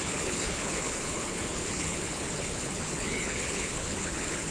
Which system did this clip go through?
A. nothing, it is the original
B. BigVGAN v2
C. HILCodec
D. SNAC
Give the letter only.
C